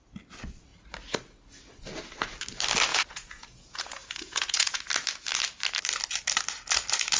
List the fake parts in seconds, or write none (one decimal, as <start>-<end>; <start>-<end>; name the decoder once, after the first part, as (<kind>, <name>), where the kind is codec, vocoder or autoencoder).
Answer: 2.9-4.8 (vocoder, Vocos)

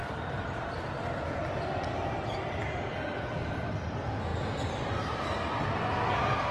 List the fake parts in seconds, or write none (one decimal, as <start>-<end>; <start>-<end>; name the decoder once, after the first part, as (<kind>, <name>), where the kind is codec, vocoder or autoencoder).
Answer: none

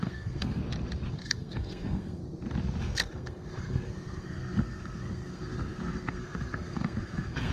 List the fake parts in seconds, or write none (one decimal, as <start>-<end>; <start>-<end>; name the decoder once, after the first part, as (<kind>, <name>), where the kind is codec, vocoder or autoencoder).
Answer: 0.0-0.6 (codec, SNAC); 1.1-2.2; 2.8-7.5

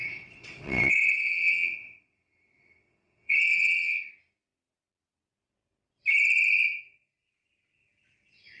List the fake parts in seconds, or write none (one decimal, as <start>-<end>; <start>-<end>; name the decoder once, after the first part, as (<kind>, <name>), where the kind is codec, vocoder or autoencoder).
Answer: 0.0-4.1 (vocoder, WaveNeXt)

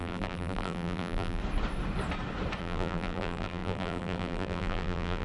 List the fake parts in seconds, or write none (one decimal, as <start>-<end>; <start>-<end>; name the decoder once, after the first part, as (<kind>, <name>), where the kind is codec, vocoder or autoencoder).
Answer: 0.0-1.4 (vocoder, BigVGAN v2); 2.6-5.2

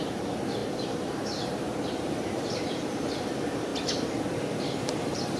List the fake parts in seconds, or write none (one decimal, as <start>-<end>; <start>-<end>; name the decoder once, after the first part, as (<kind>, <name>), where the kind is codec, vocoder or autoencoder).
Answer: 0.0-3.7 (vocoder, BigVGAN v2); 4.3-5.4